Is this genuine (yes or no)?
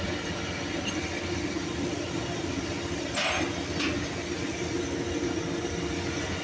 yes